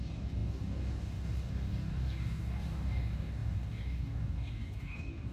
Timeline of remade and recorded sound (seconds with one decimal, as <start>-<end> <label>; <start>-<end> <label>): 0.0-5.3 remade